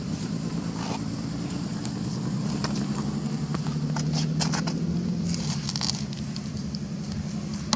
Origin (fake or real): real